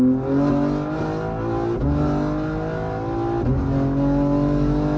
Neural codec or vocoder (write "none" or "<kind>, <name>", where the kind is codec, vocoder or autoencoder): none